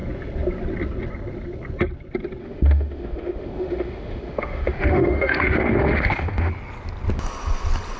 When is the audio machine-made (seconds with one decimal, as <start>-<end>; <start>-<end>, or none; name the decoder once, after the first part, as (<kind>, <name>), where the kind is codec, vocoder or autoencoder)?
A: 2.4-6.5 (autoencoder, DAC-VAE)

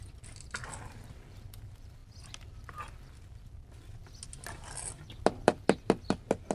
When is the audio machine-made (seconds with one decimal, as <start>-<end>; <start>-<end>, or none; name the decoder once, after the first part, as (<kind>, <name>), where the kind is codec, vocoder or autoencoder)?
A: none

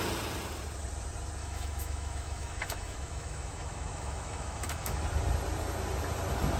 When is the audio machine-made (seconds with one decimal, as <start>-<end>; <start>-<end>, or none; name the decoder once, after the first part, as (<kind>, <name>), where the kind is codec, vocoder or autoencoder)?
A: 1.4-5.0 (autoencoder, DAC-VAE)

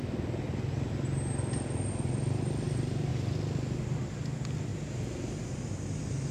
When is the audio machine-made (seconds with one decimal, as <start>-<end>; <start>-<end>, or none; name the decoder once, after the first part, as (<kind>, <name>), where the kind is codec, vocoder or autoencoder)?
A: none

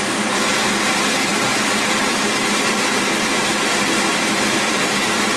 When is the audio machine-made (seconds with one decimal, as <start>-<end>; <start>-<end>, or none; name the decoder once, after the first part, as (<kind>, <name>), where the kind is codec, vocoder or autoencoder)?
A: none

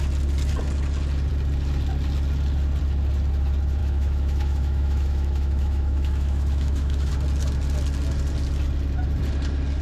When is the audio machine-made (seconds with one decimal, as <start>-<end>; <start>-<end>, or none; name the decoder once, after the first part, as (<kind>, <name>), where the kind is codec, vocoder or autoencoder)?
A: 3.8-7.1 (autoencoder, DAC-VAE)